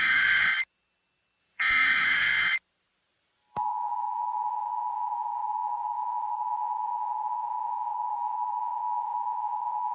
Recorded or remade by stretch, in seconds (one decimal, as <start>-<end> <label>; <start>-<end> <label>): 0.0-0.5 remade; 0.5-1.4 recorded; 1.4-2.3 remade; 2.3-3.0 recorded; 3.0-9.9 remade